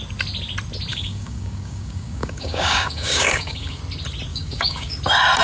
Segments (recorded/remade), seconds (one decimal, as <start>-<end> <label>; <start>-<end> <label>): 0.0-0.9 recorded; 0.9-3.8 remade; 3.8-4.3 recorded; 4.3-5.0 remade; 5.0-5.4 recorded